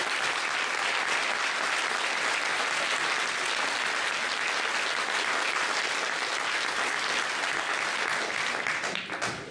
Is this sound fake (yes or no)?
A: no